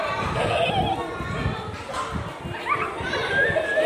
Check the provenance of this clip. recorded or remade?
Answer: recorded